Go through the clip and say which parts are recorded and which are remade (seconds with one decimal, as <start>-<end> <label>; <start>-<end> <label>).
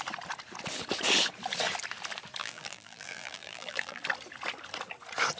0.0-2.4 recorded; 2.4-4.0 remade; 4.0-5.4 recorded